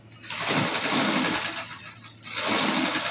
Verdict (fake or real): real